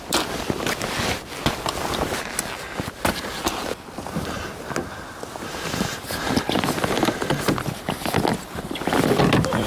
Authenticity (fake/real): real